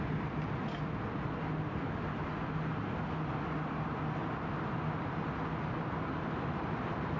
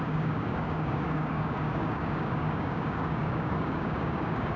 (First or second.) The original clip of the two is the first